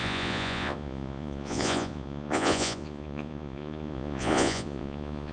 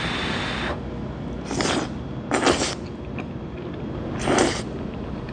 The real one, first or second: second